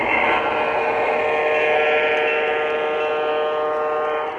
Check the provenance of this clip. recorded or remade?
recorded